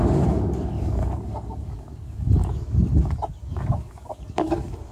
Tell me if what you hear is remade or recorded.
remade